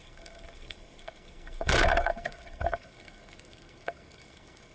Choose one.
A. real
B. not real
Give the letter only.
B